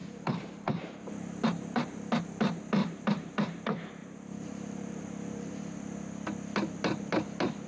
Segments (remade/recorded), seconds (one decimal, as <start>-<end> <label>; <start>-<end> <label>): 0.0-2.2 remade; 2.2-2.8 recorded; 2.8-3.6 remade; 3.6-4.0 recorded; 4.0-5.6 remade; 5.6-7.7 recorded